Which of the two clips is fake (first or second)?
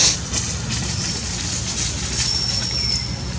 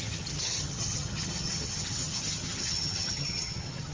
second